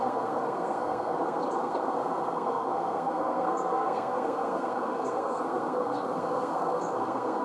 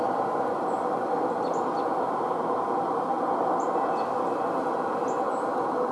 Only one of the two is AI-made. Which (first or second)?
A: first